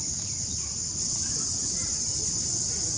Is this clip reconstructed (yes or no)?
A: no